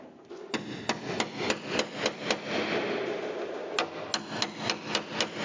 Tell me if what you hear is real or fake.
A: real